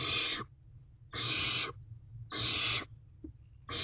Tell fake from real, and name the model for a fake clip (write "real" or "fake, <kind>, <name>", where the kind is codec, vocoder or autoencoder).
real